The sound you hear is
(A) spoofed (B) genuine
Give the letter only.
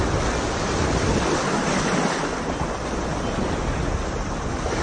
B